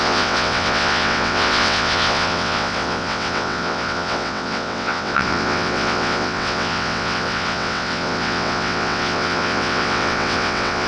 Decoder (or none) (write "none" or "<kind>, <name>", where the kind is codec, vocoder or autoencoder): vocoder, WaveNeXt